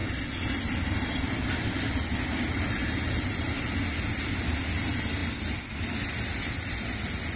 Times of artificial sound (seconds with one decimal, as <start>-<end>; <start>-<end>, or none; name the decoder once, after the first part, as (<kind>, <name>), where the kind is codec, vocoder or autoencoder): none